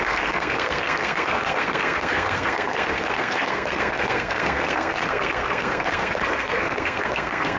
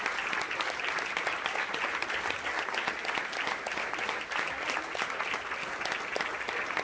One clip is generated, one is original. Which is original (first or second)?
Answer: second